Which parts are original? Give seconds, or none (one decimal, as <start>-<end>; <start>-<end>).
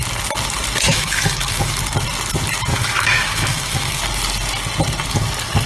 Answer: 0.0-0.9; 1.8-2.7; 4.0-5.7